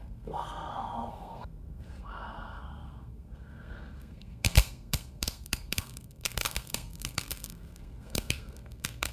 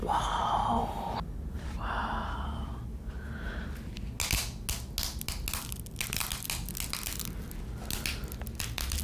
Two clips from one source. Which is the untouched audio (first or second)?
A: second